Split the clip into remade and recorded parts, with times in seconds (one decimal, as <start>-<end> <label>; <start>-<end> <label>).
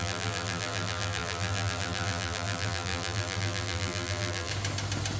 0.0-4.5 remade; 4.5-5.2 recorded